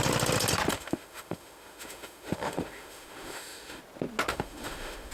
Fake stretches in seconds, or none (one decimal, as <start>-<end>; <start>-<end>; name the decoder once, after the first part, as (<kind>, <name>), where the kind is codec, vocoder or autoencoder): 0.7-3.8 (autoencoder, DAC-VAE); 4.3-5.1